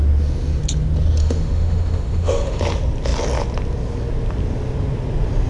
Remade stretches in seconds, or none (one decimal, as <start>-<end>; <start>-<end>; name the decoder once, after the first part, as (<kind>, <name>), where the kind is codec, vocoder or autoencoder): 1.2-2.6 (autoencoder, DAC-VAE)

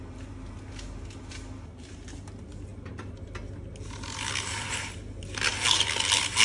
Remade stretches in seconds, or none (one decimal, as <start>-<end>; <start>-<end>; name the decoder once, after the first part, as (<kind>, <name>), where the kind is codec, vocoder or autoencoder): none

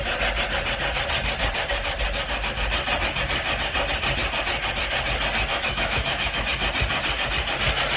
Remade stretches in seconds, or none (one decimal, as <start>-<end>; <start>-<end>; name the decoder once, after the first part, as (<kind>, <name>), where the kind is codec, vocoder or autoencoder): 5.5-6.5 (autoencoder, DAC-VAE)

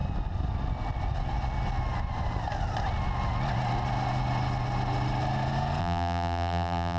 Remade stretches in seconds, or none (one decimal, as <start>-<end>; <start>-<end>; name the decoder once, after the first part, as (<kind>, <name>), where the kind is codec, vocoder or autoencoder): 5.8-7.0 (vocoder, BigVGAN v2)

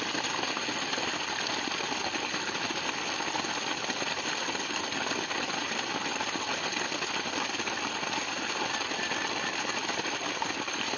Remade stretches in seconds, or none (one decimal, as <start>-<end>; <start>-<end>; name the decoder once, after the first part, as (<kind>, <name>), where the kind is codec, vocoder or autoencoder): none

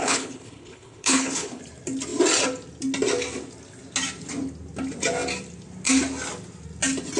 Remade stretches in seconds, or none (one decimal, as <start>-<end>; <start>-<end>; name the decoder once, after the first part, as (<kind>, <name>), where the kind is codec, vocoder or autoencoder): 0.0-1.6 (codec, HILCodec)

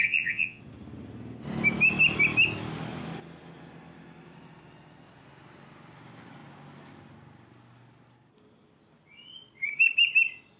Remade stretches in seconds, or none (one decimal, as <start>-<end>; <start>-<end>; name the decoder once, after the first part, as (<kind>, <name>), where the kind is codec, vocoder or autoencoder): 0.0-0.6 (vocoder, Vocos)

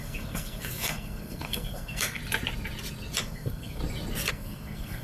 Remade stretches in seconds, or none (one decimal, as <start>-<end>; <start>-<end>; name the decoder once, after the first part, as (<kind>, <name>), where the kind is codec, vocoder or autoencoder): 0.0-2.2 (codec, SNAC); 3.2-3.8; 4.3-5.0